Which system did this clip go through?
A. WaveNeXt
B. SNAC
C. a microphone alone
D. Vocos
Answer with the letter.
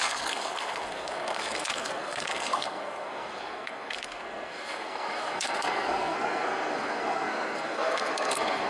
B